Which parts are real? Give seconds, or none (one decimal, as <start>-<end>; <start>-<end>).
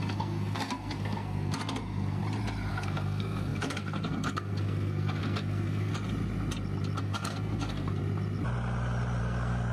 2.2-2.7; 5.9-7.0; 8.0-9.2